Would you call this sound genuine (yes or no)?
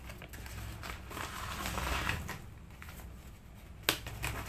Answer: yes